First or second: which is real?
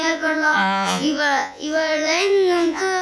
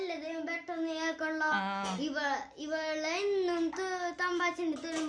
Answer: second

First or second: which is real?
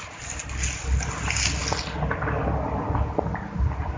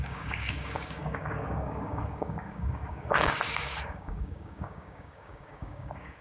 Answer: first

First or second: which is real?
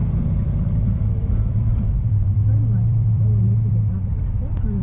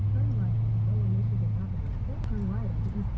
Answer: second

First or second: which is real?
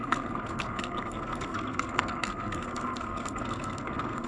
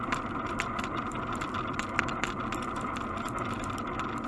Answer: second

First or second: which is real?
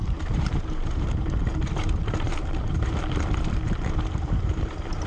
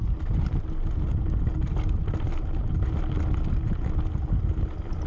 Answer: second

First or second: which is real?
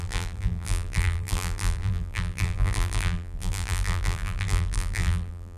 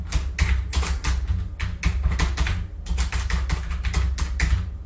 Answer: second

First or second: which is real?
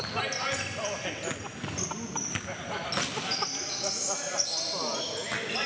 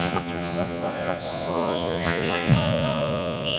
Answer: first